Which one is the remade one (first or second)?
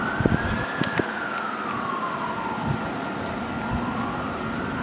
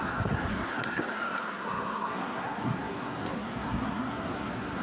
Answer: second